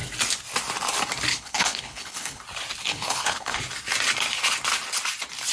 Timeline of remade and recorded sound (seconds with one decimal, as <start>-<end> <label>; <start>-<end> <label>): 0.0-1.3 recorded; 1.3-2.4 remade; 2.4-2.9 recorded; 2.9-3.6 remade; 3.6-5.5 recorded

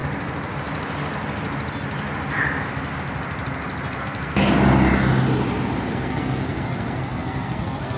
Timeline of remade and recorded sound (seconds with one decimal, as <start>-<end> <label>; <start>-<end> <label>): 0.0-4.0 recorded; 4.0-4.4 remade; 4.4-5.9 recorded; 5.9-8.0 remade

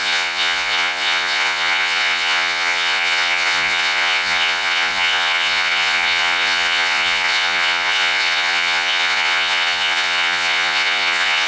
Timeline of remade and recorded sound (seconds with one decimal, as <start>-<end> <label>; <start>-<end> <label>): 0.0-11.5 remade

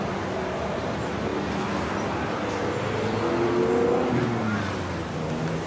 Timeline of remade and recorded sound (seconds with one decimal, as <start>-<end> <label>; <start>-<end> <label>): 0.0-5.7 recorded

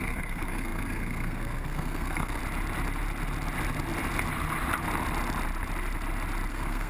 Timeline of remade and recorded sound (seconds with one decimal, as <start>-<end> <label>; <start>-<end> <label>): 0.0-2.4 remade; 2.4-6.5 recorded; 6.5-6.9 remade

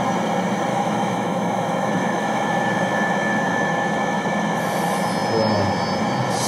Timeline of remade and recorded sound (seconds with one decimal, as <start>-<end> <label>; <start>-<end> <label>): 0.0-0.7 recorded; 0.7-4.6 remade; 4.6-6.5 recorded